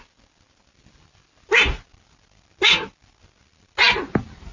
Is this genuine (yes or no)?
yes